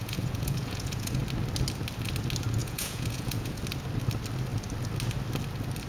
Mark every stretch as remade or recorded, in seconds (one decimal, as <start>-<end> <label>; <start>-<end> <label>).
0.0-1.2 remade; 1.2-2.6 recorded; 2.6-3.6 remade; 3.6-5.9 recorded

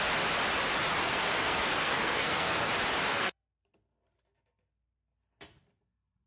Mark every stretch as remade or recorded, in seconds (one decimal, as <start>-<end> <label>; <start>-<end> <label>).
0.0-1.0 recorded; 1.0-2.7 remade; 2.7-3.1 recorded; 3.1-3.6 remade; 3.6-6.3 recorded

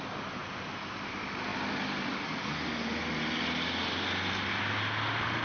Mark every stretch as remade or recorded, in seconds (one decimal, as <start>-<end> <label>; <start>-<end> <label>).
0.0-5.4 recorded

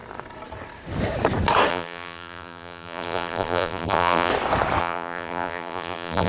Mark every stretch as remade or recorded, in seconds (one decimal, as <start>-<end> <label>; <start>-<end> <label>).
0.0-1.7 recorded; 1.7-4.3 remade; 4.3-4.8 recorded; 4.8-6.3 remade

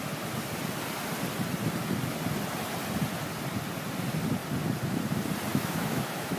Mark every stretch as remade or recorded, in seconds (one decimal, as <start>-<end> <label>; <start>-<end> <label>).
0.0-5.5 recorded; 5.5-6.4 remade

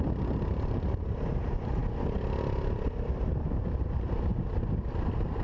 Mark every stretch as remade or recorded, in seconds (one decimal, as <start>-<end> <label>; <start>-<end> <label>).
0.0-5.4 recorded

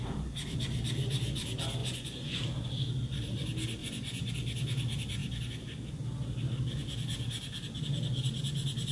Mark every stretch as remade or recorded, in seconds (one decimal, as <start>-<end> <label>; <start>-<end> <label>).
0.0-1.8 recorded; 1.8-2.4 remade; 2.4-3.8 recorded; 3.8-4.3 remade; 4.3-8.9 recorded

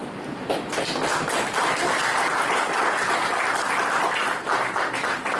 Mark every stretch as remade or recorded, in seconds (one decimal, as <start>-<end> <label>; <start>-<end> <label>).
0.0-5.4 recorded